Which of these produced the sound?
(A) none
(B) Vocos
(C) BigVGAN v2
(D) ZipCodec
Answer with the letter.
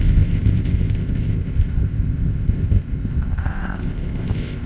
D